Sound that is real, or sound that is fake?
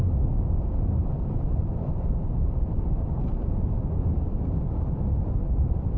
fake